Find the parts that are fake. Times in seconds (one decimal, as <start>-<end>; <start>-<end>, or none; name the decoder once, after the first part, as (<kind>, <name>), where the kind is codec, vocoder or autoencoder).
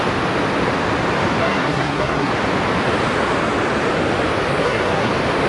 1.4-2.3 (codec, SNAC); 4.6-5.1